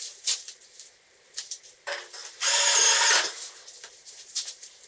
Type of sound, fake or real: fake